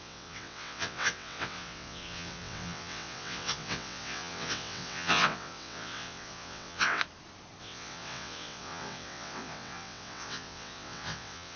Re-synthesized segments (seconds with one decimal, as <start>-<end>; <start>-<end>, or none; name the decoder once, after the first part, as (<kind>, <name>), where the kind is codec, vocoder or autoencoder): 0.0-7.0 (vocoder, WaveNeXt); 7.6-11.6